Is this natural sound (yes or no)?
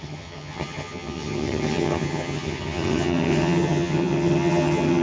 no